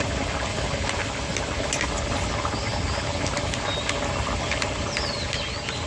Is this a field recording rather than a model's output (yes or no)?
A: yes